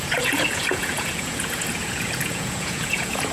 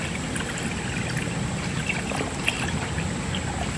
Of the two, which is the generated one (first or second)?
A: first